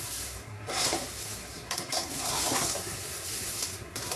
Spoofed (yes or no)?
yes